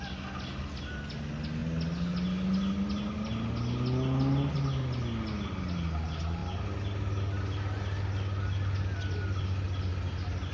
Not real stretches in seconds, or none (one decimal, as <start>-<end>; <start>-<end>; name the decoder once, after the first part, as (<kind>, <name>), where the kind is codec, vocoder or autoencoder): none